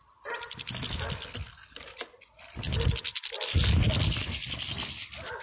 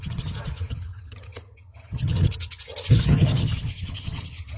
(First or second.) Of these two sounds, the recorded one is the first